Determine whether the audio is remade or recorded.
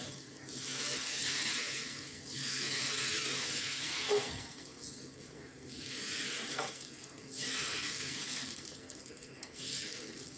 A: remade